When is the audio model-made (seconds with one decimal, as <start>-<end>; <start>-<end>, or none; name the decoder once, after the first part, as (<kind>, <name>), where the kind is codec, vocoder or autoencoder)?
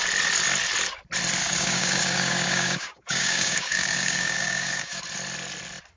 1.4-5.0 (codec, DAC)